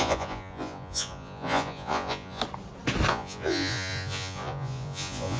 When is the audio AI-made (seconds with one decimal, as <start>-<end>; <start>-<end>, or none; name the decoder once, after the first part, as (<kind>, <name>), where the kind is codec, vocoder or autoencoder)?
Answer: 0.0-2.4 (vocoder, Vocos); 3.1-5.4